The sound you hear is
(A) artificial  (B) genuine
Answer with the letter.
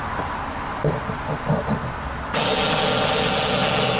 B